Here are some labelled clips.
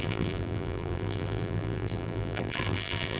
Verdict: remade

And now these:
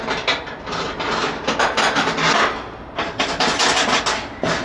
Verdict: recorded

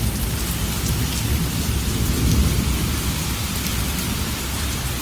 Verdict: recorded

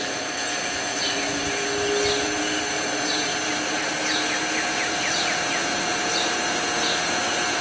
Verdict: recorded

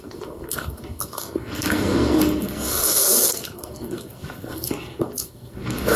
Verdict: remade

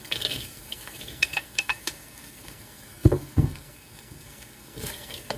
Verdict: remade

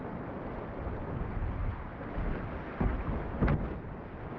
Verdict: recorded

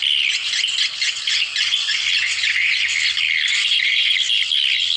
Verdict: recorded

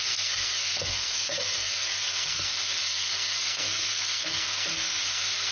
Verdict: remade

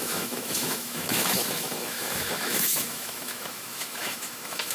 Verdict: remade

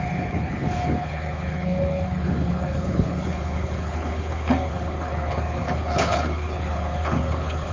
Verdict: remade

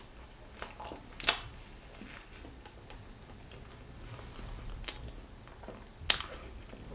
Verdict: recorded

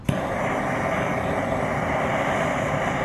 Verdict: remade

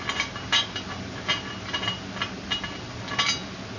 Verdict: recorded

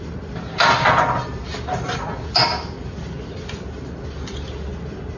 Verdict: recorded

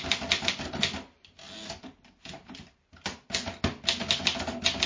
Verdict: recorded